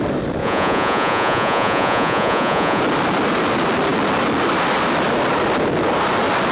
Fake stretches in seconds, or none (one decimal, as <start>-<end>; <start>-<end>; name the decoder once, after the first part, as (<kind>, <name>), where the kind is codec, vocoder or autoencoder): 0.4-2.8 (vocoder, Vocos)